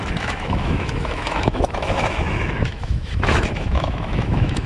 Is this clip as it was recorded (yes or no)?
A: no